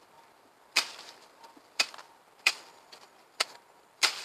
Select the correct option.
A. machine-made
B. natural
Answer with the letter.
A